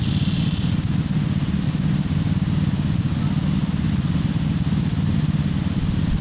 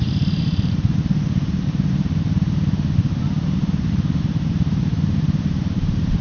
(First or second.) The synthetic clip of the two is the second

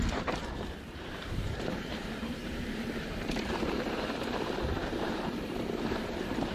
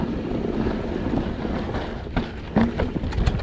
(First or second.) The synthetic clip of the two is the first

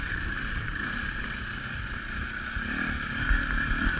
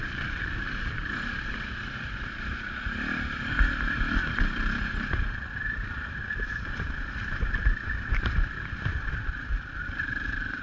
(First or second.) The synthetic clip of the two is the second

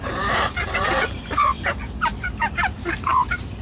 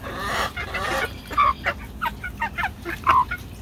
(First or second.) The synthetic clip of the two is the first